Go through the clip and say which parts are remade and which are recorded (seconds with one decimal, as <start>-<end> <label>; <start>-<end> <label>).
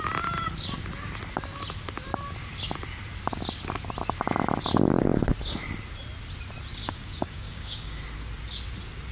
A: 0.0-6.8 recorded; 6.8-8.0 remade; 8.0-9.1 recorded